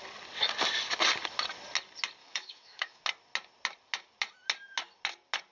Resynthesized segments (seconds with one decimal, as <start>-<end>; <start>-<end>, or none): 2.2-3.0